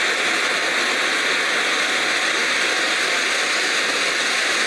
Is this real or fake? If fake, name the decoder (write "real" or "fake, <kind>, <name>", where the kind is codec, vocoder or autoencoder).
real